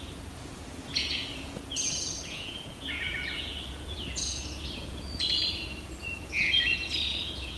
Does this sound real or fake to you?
fake